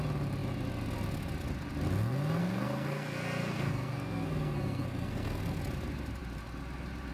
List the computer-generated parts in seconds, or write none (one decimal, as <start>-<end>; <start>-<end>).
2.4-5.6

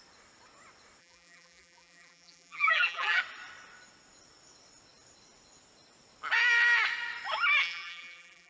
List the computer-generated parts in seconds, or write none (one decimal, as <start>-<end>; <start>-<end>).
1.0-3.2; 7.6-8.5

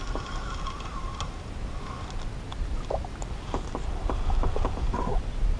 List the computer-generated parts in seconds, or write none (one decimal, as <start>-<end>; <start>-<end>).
none

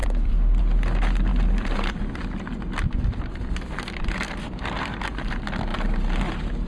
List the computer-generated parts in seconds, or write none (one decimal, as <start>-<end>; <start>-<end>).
0.0-0.6